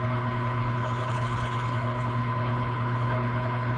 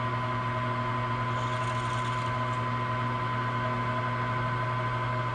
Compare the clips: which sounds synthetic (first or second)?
first